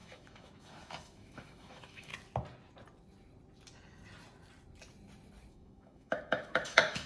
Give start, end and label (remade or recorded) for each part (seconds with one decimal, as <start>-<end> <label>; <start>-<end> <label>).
0.0-2.1 remade; 2.1-5.5 recorded; 5.5-7.1 remade